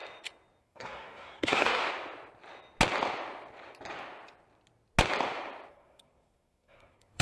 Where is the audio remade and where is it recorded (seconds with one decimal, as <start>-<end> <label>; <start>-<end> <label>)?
0.0-0.6 recorded; 0.6-1.8 remade; 1.8-5.7 recorded; 5.7-7.2 remade